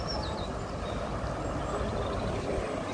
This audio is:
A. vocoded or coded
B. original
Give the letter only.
B